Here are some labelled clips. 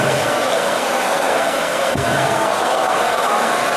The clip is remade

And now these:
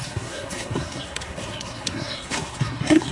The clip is remade